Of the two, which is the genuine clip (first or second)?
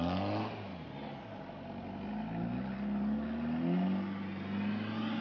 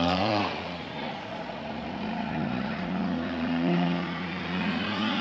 first